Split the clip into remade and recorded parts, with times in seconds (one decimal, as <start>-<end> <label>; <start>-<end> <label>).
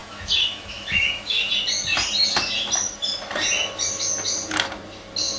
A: 0.0-1.5 remade; 1.5-5.4 recorded